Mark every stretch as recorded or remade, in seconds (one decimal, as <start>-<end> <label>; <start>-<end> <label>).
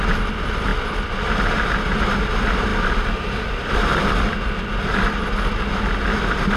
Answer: 0.0-0.7 recorded; 0.7-1.3 remade; 1.3-2.7 recorded; 2.7-5.3 remade; 5.3-6.6 recorded